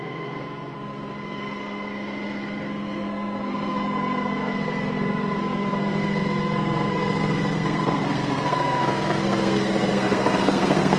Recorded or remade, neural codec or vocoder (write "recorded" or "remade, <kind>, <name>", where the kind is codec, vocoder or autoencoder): remade, codec, SNAC